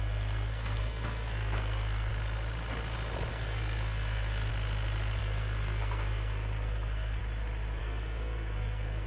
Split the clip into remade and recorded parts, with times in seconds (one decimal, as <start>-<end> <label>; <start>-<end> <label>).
0.0-2.1 remade; 2.1-3.3 recorded; 3.3-4.5 remade; 4.5-5.2 recorded; 5.2-7.2 remade; 7.2-7.8 recorded; 7.8-9.1 remade